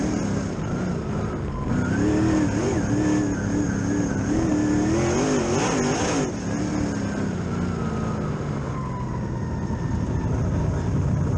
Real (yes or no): yes